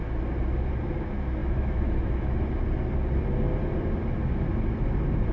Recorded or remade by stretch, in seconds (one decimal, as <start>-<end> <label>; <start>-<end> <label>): 0.0-1.4 recorded; 1.4-2.4 remade; 2.4-5.3 recorded